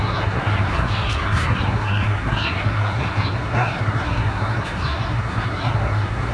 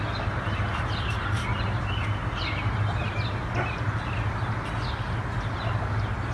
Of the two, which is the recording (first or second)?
second